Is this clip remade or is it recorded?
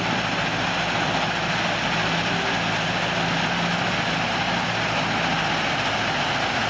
recorded